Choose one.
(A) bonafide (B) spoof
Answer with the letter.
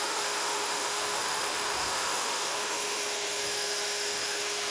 B